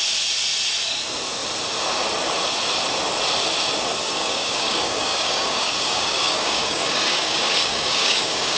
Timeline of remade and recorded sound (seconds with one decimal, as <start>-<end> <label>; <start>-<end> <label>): 0.0-4.0 recorded; 4.0-8.6 remade